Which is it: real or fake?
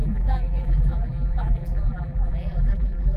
fake